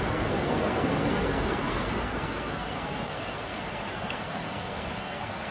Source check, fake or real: fake